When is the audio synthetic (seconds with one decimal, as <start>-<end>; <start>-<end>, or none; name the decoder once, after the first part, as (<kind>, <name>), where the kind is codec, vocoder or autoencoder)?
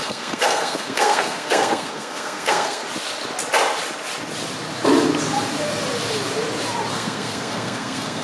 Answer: 0.0-2.8 (codec, SNAC); 6.9-8.2